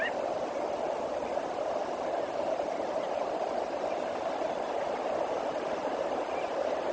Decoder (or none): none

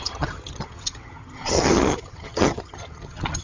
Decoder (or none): vocoder, HiFi-GAN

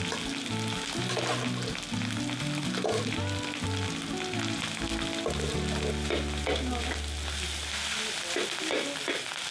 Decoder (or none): none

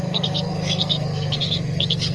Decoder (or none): codec, SNAC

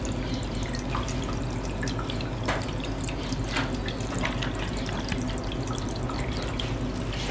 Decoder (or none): none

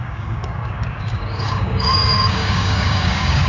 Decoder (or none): codec, DAC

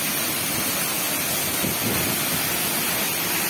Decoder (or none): none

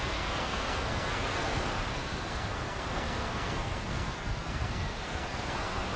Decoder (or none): codec, SNAC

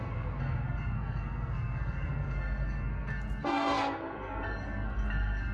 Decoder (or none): codec, SNAC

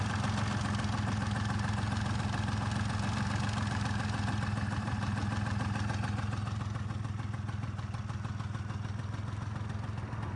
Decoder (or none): none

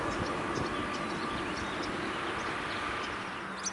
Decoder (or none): none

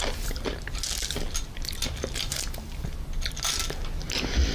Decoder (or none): none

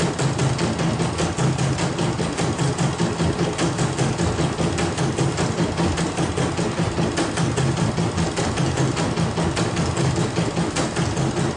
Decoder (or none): none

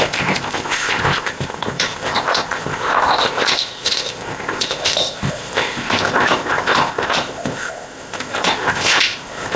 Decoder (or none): codec, ZipCodec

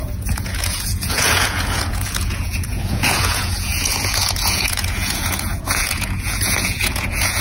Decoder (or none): vocoder, Vocos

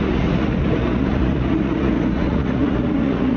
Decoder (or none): vocoder, Vocos